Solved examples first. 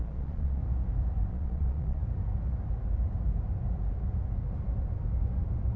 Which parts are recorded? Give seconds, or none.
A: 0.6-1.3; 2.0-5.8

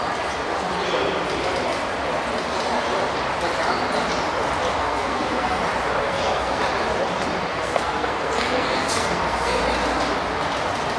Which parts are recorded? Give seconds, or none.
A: 0.0-4.8; 5.6-6.0; 6.6-7.5; 9.6-11.0

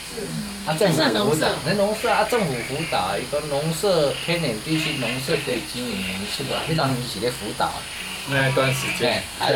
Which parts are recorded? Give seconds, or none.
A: 1.2-5.3; 6.9-7.7; 8.4-9.1

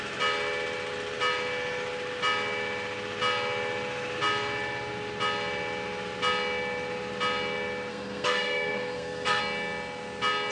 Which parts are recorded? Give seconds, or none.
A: 0.0-7.9; 9.4-10.5

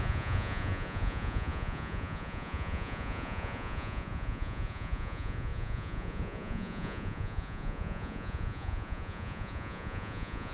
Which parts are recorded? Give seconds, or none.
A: none

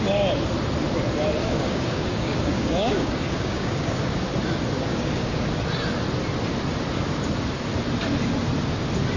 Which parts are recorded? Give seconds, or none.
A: 0.0-1.4; 4.3-4.9; 5.5-9.2

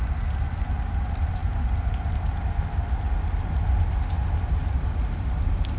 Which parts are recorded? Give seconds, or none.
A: 0.0-5.8

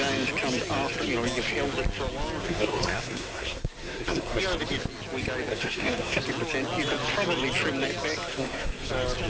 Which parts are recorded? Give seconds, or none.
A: 0.0-2.4; 4.4-5.5; 6.2-8.3; 8.9-9.3